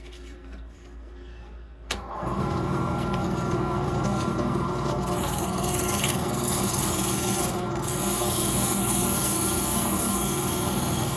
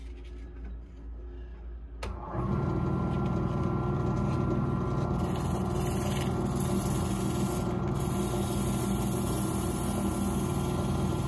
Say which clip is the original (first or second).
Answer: second